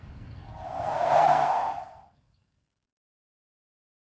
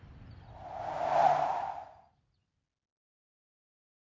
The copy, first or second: first